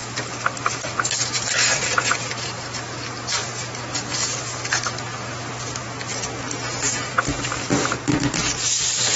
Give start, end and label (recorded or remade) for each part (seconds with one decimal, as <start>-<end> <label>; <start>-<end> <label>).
0.0-1.0 recorded; 1.0-3.4 remade; 3.4-7.1 recorded; 7.1-9.2 remade

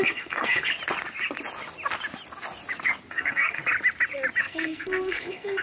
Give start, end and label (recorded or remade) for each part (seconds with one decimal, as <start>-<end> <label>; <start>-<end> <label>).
0.0-0.7 remade; 0.7-3.1 recorded; 3.1-3.6 remade; 3.6-4.4 recorded; 4.4-5.6 remade

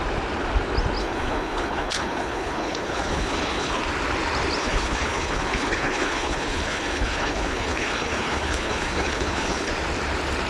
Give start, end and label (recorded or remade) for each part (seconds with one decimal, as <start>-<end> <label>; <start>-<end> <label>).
0.0-1.0 recorded; 1.0-3.8 remade; 3.8-4.6 recorded; 4.6-9.7 remade; 9.7-10.5 recorded

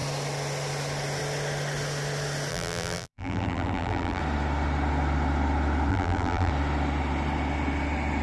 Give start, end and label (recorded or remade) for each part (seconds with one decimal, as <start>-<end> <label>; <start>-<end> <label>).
0.0-2.5 recorded; 2.5-4.2 remade; 4.2-5.9 recorded; 5.9-6.5 remade; 6.5-8.2 recorded

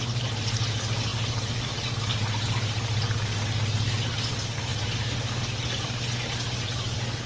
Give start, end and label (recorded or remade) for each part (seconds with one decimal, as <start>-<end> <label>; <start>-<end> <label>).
0.0-7.3 recorded

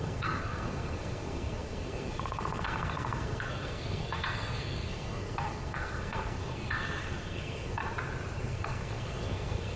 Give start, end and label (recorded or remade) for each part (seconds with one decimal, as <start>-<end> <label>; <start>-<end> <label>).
0.0-7.8 remade; 7.8-8.4 recorded; 8.4-9.8 remade

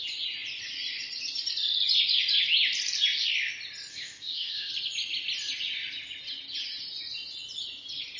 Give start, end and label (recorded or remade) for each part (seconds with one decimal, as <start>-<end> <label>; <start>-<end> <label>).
0.0-3.9 recorded; 3.9-4.7 remade; 4.7-8.2 recorded